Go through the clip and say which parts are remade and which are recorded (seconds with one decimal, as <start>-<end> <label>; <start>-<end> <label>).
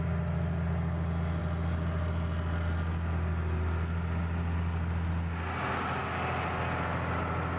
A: 0.0-7.6 recorded